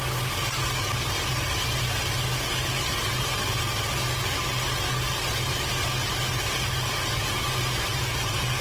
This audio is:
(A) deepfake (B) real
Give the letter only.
B